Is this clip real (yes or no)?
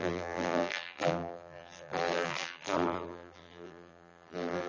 no